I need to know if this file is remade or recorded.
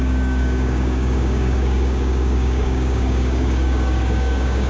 remade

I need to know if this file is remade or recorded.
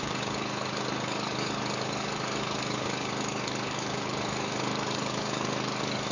remade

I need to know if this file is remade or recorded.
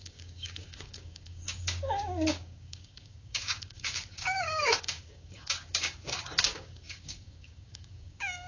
remade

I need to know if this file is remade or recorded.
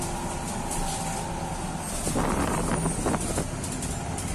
recorded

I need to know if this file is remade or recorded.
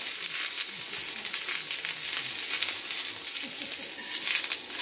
recorded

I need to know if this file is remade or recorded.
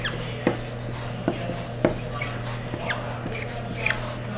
recorded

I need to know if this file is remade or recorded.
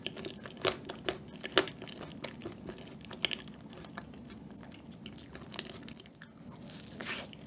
recorded